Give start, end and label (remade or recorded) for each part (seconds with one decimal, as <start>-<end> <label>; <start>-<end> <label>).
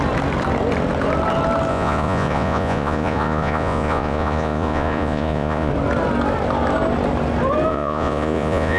0.0-1.7 recorded; 1.7-5.7 remade; 5.7-7.7 recorded; 7.7-8.8 remade